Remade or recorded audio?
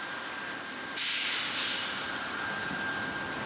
recorded